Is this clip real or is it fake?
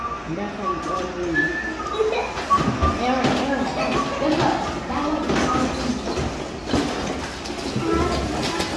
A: real